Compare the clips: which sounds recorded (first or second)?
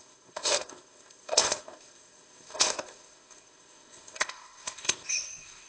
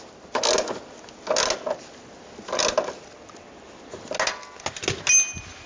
second